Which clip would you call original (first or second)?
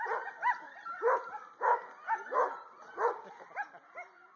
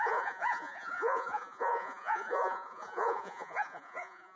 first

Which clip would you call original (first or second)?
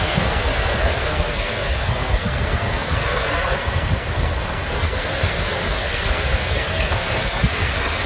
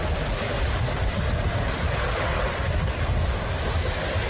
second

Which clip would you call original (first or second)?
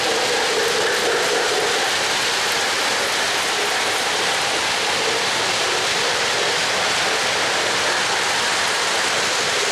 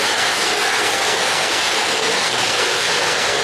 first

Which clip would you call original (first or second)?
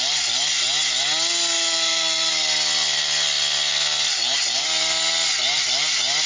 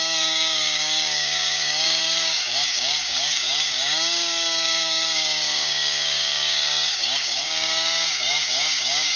first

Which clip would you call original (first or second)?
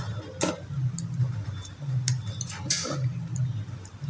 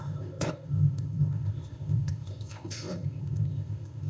first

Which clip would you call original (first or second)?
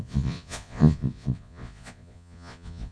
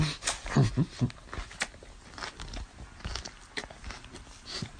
second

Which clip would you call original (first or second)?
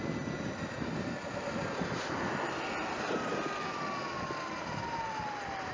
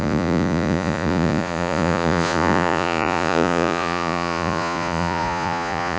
first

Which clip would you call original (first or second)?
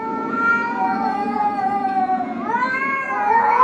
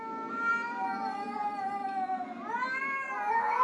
second